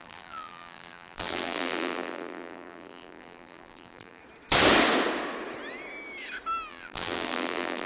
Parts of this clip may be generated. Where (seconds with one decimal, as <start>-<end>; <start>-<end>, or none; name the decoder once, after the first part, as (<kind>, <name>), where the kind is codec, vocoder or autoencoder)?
0.0-4.2 (vocoder, BigVGAN v2); 6.7-7.9